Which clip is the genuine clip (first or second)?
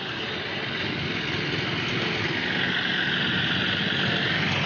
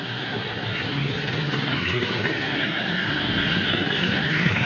first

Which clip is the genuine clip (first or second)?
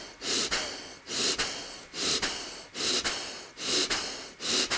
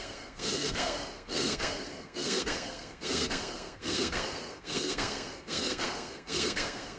first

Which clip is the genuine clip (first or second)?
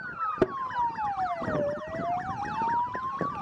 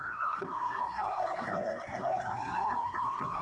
first